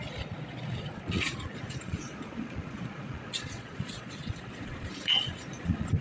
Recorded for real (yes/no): no